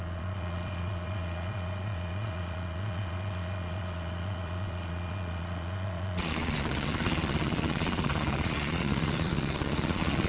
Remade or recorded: remade